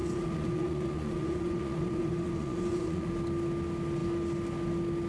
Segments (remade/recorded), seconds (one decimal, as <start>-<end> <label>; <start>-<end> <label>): 0.0-3.1 remade; 3.1-5.1 recorded